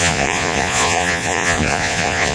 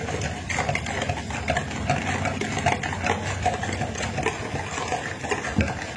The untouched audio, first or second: second